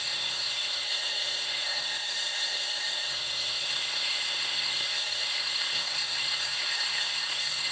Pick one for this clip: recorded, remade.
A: remade